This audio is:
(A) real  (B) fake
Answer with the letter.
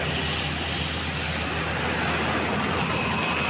A